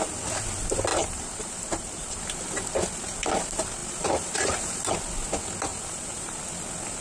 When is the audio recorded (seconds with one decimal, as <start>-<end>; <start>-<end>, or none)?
0.0-0.9; 2.2-3.8; 4.9-5.7; 6.4-7.0